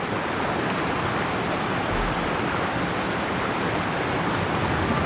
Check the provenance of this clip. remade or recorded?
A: recorded